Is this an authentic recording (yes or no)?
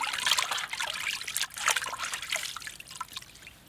yes